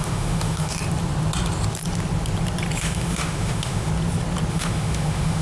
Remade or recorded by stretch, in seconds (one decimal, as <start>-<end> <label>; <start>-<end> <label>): 0.0-0.8 remade; 0.8-2.8 recorded; 2.8-3.9 remade; 3.9-4.5 recorded; 4.5-5.4 remade